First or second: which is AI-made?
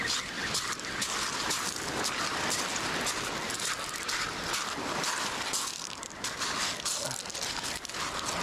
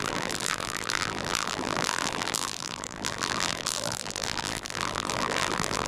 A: second